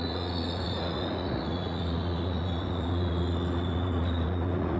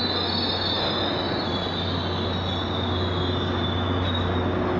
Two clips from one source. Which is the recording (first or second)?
second